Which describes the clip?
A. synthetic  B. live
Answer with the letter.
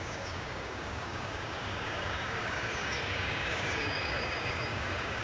A